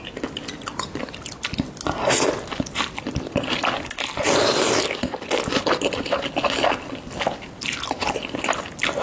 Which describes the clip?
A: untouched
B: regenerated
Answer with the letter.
A